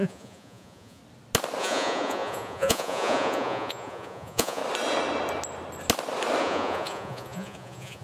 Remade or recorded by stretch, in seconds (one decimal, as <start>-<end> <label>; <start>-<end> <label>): 0.0-1.0 remade; 1.0-1.6 recorded; 1.6-4.6 remade; 4.6-6.4 recorded; 6.4-8.0 remade